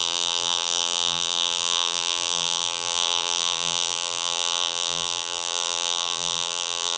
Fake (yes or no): yes